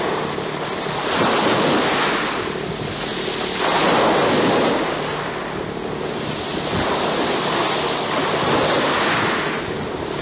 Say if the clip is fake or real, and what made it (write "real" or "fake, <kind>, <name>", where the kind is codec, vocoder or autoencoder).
real